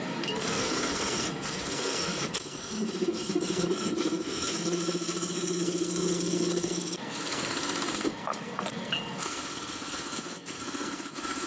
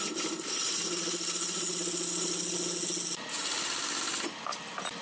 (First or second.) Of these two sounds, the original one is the second